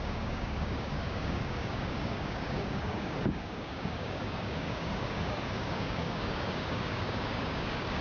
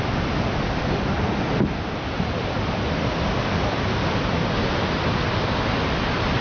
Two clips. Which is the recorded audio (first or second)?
second